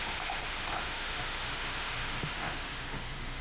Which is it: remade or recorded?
remade